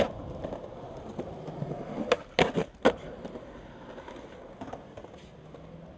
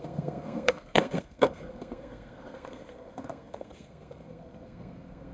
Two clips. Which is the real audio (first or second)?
first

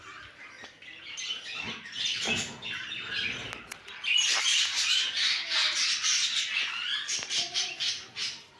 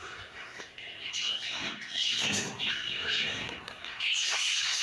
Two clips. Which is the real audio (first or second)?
first